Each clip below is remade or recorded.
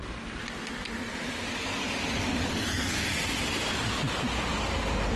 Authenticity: recorded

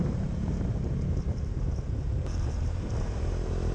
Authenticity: remade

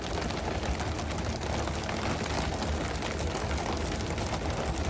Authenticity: recorded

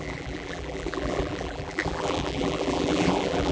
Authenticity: remade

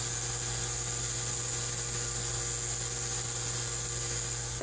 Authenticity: recorded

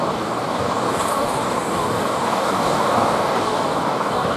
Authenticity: remade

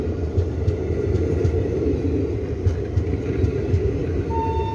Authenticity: recorded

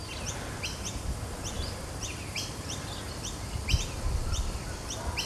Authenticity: recorded